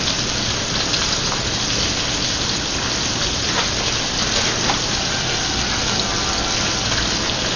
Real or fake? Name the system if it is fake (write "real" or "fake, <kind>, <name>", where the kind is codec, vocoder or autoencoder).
real